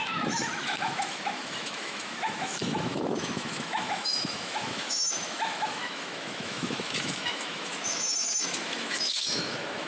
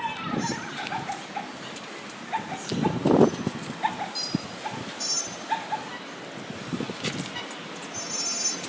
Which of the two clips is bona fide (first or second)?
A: second